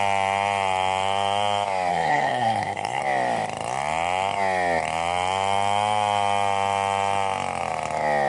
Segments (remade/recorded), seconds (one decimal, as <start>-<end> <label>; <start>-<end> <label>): 0.0-1.9 recorded; 1.9-3.0 remade; 3.0-8.3 recorded